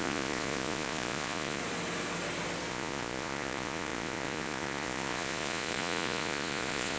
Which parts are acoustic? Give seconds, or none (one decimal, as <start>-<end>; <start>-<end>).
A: 1.6-2.7